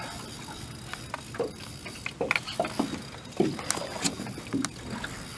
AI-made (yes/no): no